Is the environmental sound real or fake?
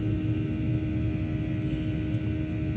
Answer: real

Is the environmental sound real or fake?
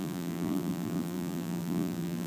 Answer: fake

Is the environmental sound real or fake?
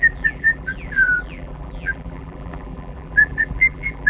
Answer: fake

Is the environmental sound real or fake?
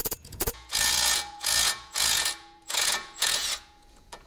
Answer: fake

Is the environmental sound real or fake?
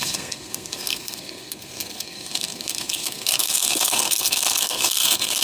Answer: fake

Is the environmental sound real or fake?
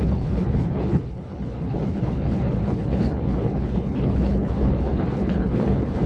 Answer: fake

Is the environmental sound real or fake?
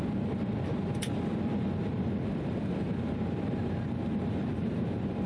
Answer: fake